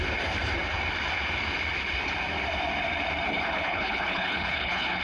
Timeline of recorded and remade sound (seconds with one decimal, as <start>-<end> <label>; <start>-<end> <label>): 0.0-3.3 recorded; 3.3-5.0 remade